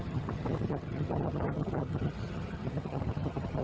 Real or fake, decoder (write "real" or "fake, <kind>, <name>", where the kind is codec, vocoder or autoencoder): fake, vocoder, HiFi-GAN